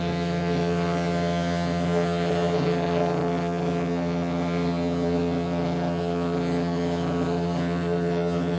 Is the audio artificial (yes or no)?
yes